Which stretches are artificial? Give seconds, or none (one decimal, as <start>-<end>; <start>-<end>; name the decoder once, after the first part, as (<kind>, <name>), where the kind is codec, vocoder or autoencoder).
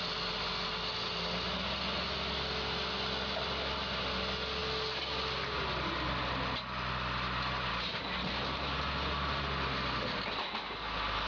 none